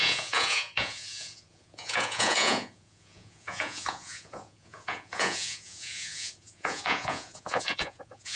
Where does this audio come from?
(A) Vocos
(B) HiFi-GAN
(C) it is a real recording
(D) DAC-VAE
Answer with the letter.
A